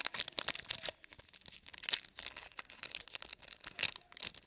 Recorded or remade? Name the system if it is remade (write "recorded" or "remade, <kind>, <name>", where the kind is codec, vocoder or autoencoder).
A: recorded